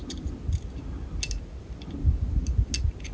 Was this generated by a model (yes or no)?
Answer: no